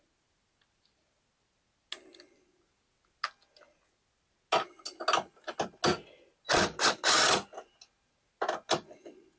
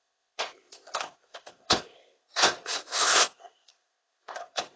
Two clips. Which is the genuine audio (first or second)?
first